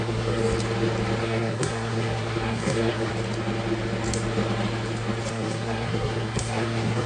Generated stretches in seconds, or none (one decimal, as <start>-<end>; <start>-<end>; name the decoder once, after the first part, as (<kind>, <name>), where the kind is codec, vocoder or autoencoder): 0.0-0.4 (codec, SNAC); 1.2-3.1; 5.3-7.1